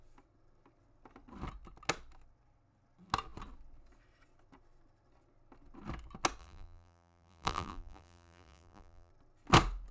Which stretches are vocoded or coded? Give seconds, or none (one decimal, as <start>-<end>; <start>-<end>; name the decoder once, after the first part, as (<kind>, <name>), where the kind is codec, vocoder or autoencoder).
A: 6.4-9.1 (vocoder, BigVGAN v2)